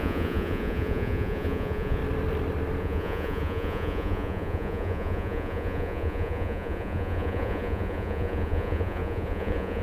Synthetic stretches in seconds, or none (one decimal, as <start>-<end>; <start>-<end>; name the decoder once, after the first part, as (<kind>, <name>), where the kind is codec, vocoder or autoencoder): 0.0-2.0 (vocoder, Vocos); 2.8-9.8